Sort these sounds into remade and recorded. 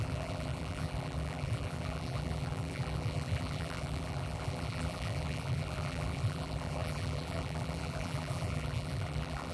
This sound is remade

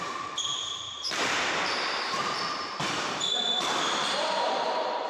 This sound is remade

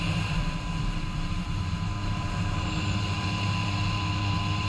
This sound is remade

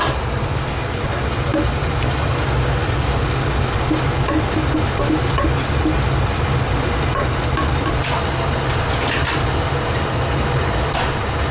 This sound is recorded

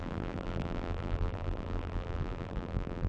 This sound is remade